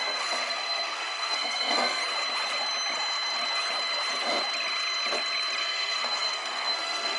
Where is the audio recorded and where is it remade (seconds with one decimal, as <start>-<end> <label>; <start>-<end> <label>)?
0.0-2.0 remade; 2.0-5.6 recorded; 5.6-7.2 remade